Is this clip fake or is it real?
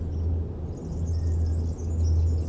real